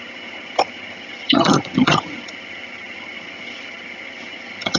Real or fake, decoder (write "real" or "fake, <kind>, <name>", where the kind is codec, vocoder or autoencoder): fake, vocoder, HiFi-GAN